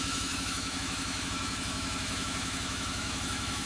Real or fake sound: fake